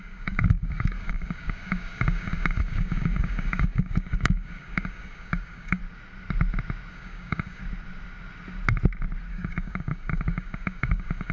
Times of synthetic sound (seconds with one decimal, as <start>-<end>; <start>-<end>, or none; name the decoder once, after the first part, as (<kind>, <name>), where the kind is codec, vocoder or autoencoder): 0.0-5.8 (codec, DAC); 6.9-7.6; 9.3-11.3